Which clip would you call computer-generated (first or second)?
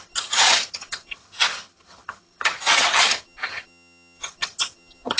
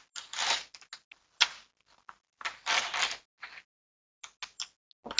first